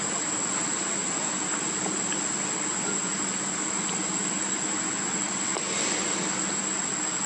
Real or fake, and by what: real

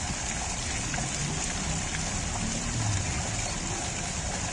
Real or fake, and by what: real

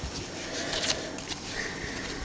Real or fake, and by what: real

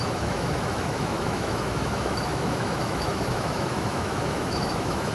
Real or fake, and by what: fake, autoencoder, DAC-VAE